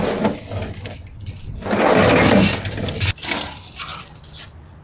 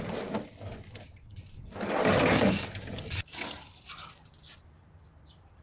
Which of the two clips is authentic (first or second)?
first